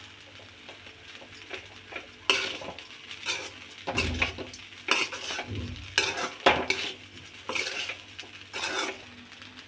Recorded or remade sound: recorded